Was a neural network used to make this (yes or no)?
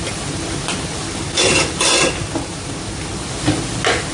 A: no